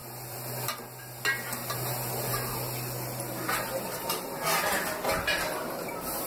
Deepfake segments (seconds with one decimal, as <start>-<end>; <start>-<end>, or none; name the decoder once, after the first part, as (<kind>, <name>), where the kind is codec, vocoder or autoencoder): none